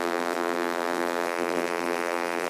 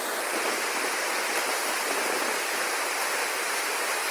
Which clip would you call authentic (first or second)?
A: second